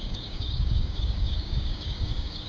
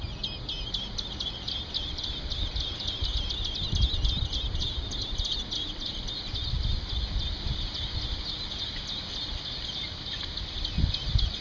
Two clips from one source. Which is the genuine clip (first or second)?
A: second